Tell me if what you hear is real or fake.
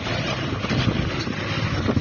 real